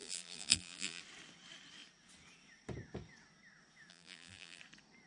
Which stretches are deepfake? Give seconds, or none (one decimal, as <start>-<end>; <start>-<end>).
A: 0.0-1.0; 3.9-4.6